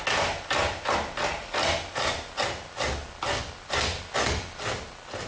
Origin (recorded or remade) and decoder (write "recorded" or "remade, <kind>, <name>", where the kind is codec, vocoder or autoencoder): recorded